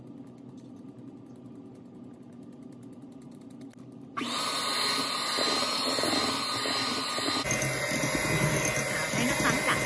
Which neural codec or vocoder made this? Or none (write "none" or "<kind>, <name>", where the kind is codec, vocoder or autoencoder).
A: none